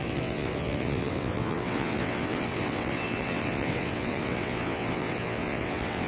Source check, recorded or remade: remade